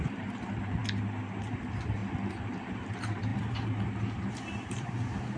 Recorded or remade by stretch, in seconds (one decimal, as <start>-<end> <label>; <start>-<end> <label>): 0.0-0.8 remade; 0.8-1.4 recorded; 1.4-5.4 remade

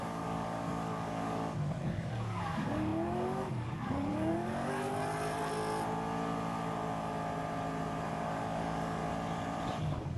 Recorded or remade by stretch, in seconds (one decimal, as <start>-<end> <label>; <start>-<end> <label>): 0.0-4.9 remade; 4.9-8.1 recorded; 8.1-9.0 remade; 9.0-9.7 recorded; 9.7-10.2 remade

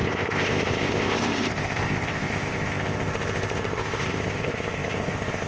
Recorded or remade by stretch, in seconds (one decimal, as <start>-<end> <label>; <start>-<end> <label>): 0.0-5.5 remade